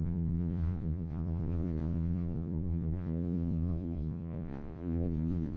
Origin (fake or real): fake